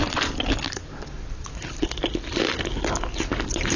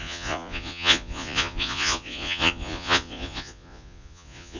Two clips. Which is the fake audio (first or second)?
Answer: second